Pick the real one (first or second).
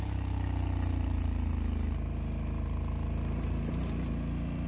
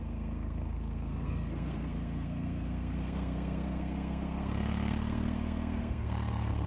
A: first